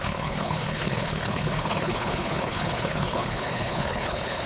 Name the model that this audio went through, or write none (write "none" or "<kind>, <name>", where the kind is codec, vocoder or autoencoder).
codec, HILCodec